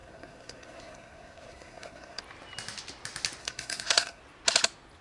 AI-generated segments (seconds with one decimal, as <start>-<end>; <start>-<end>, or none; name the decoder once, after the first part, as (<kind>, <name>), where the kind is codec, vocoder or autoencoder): 0.0-2.2 (codec, SNAC); 3.4-4.2